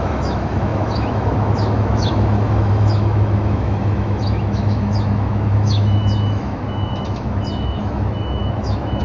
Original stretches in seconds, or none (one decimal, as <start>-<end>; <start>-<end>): none